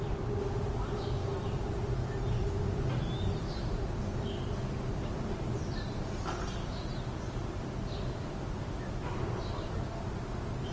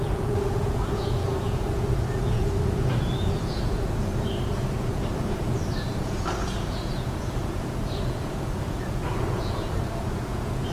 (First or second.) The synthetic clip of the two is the second